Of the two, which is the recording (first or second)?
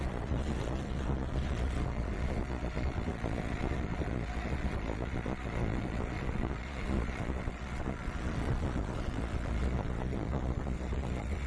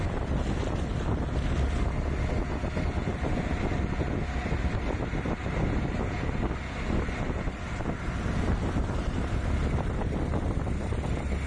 second